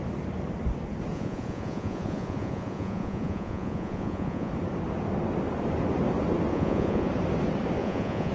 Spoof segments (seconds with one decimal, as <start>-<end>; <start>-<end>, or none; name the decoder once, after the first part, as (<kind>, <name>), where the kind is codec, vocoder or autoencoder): 1.1-4.5 (vocoder, Vocos); 6.5-7.1; 7.8-8.3